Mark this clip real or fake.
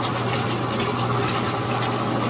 real